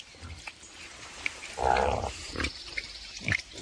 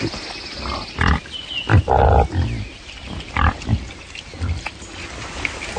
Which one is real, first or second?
second